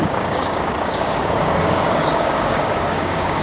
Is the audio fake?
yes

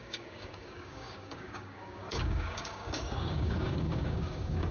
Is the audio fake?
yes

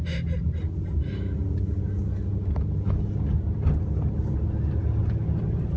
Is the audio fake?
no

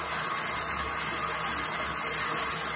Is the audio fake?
no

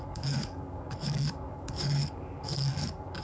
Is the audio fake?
yes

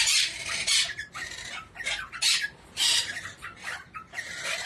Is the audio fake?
no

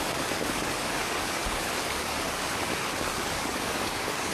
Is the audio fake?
yes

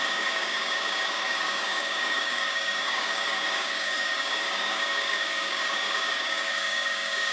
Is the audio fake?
yes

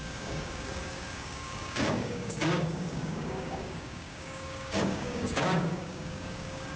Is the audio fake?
yes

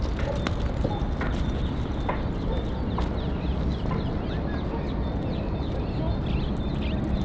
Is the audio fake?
no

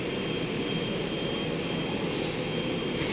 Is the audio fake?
no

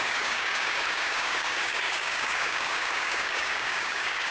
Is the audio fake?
yes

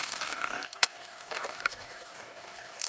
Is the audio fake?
yes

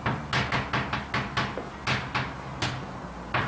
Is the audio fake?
no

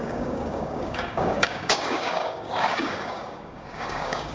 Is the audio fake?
yes